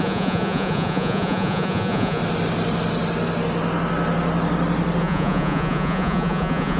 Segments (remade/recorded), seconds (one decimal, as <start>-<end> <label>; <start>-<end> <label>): 0.0-2.2 remade; 2.2-5.0 recorded; 5.0-6.8 remade